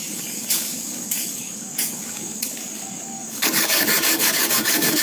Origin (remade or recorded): remade